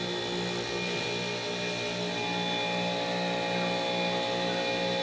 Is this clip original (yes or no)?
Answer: yes